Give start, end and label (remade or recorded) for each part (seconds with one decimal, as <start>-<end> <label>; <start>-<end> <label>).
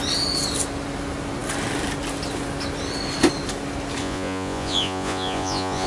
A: 0.0-4.0 recorded; 4.0-5.9 remade